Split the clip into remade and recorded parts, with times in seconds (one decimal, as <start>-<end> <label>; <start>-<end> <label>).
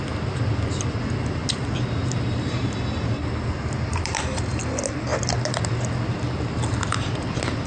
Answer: 0.0-1.4 recorded; 1.4-2.7 remade; 2.7-3.9 recorded; 3.9-4.6 remade; 4.6-7.7 recorded